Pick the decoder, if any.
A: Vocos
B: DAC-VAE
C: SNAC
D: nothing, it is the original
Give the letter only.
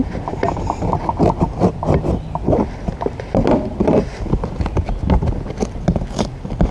D